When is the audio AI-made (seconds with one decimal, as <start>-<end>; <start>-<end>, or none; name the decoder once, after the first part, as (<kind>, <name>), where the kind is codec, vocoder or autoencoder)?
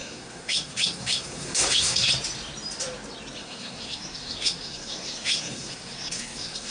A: 0.0-2.1 (codec, SNAC); 3.4-6.7